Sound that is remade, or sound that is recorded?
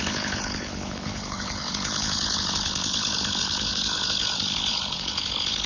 remade